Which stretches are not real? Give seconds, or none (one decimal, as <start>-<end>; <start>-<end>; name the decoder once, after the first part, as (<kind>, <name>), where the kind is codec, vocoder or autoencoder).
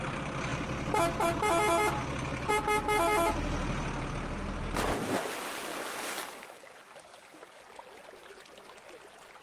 5.7-7.6 (codec, DAC)